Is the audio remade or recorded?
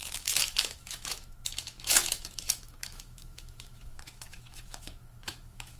remade